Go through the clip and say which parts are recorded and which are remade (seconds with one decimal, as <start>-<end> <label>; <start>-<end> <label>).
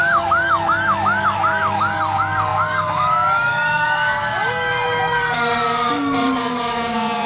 0.0-7.3 remade